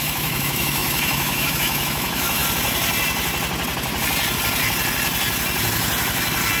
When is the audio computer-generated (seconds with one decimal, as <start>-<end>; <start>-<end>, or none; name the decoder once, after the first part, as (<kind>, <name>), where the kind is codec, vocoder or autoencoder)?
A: 0.0-2.4 (autoencoder, DAC-VAE)